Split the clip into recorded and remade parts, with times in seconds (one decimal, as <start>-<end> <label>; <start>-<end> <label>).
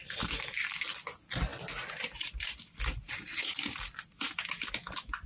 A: 0.0-5.3 recorded